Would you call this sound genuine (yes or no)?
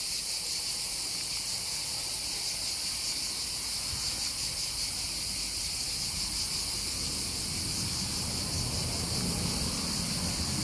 yes